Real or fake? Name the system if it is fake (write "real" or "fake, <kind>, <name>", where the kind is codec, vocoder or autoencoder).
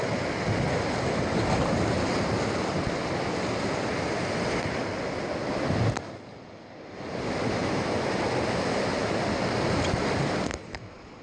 real